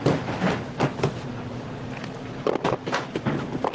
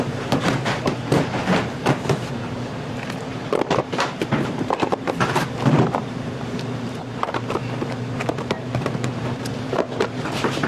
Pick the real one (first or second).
first